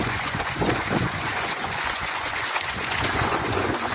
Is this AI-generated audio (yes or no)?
yes